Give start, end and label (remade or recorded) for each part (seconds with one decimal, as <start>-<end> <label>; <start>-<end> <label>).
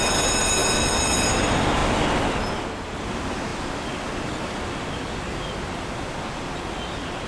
0.0-7.3 recorded